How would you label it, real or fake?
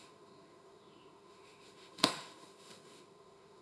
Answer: fake